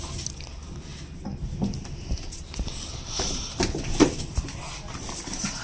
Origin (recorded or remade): recorded